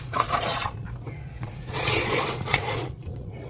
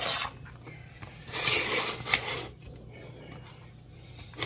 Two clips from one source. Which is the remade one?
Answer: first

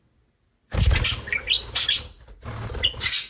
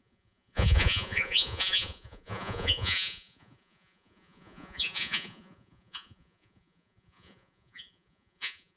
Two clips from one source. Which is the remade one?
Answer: second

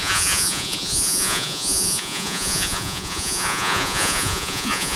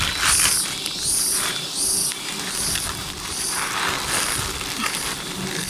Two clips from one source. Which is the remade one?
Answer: first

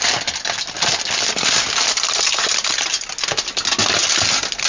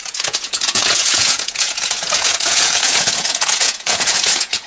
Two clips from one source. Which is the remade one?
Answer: second